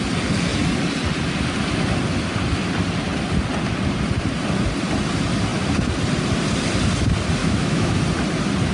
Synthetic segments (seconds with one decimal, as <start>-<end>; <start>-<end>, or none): 7.4-8.0